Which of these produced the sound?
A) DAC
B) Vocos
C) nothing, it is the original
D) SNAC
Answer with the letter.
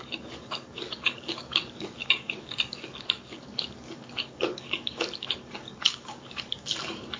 A